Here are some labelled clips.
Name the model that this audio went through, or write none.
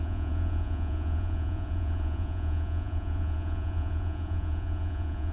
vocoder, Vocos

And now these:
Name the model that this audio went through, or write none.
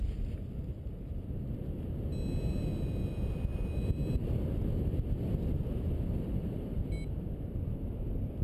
none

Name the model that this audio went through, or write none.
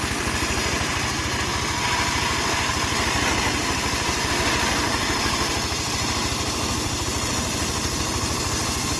none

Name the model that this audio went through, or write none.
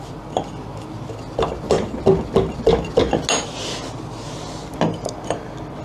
none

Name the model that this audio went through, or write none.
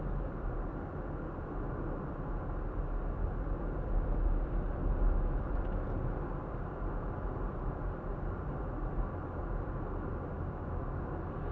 none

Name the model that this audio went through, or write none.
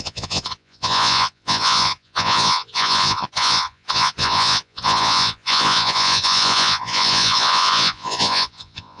vocoder, Vocos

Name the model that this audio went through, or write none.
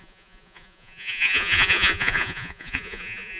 vocoder, Vocos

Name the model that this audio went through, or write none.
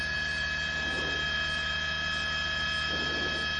none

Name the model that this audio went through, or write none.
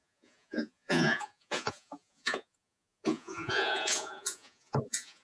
vocoder, Vocos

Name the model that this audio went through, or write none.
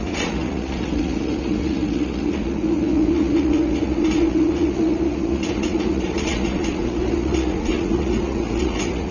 vocoder, Vocos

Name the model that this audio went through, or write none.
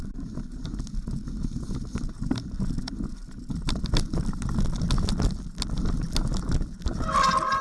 none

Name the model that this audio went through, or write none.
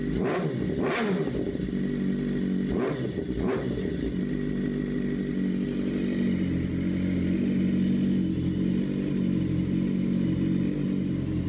none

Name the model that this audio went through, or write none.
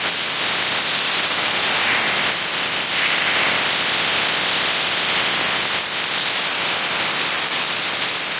none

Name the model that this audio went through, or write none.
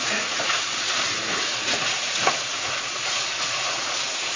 vocoder, Vocos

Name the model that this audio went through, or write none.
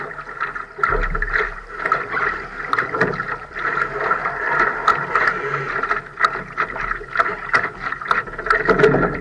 none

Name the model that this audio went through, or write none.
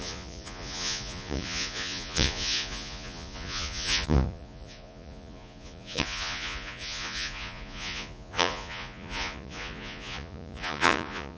vocoder, Vocos